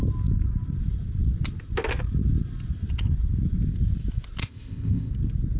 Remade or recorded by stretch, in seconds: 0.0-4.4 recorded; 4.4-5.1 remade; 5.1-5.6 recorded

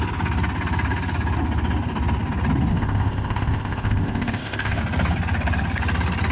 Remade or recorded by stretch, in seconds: 0.0-2.7 recorded; 2.7-4.8 remade; 4.8-6.3 recorded